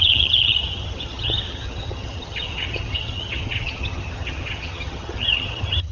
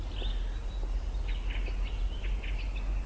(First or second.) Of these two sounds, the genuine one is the second